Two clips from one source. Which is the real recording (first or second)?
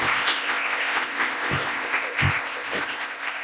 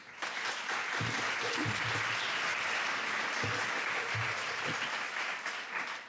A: second